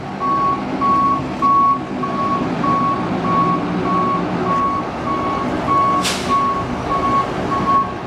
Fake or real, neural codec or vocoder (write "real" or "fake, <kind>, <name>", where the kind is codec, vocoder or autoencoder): real